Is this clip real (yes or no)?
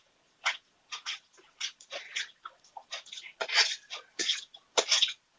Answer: no